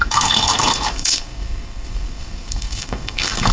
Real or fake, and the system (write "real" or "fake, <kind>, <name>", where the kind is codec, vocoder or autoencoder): fake, codec, SNAC